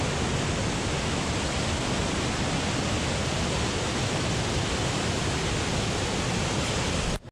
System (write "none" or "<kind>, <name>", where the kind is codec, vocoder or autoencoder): none